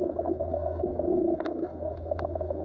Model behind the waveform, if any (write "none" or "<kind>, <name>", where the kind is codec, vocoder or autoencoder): codec, SNAC